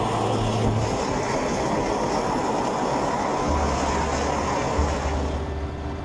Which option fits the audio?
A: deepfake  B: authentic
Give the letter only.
B